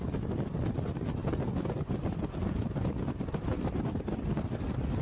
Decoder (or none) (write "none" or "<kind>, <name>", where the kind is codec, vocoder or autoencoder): none